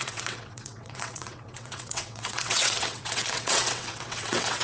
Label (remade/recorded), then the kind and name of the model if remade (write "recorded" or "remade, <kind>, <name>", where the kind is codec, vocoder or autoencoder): remade, vocoder, WaveNeXt